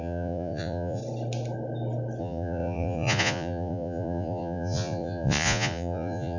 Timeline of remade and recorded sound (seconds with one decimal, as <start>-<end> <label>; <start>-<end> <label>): 0.0-1.0 remade; 1.0-2.2 recorded; 2.2-6.4 remade